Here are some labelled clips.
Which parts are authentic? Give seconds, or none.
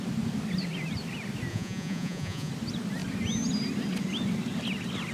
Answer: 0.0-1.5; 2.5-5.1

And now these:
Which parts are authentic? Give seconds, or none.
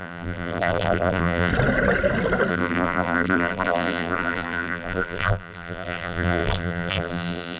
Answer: 1.5-2.5